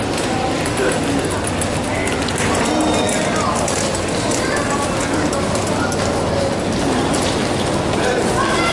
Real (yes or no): yes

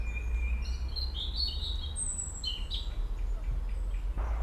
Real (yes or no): yes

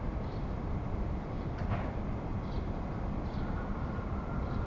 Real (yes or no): no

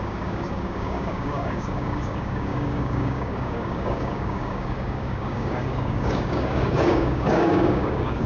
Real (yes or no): no